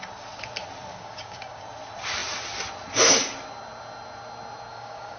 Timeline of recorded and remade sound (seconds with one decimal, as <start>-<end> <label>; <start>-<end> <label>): 0.0-0.9 recorded; 0.9-1.6 remade; 1.6-4.7 recorded; 4.7-5.2 remade